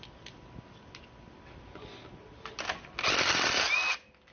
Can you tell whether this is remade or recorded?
recorded